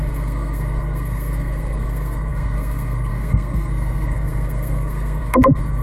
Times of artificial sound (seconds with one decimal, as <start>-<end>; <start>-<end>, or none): 0.0-5.8